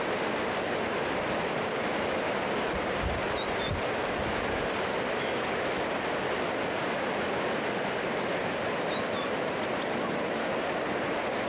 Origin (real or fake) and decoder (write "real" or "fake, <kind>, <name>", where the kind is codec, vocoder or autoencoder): fake, vocoder, BigVGAN v2